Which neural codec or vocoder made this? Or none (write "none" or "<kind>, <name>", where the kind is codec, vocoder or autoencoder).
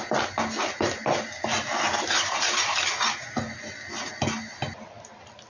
none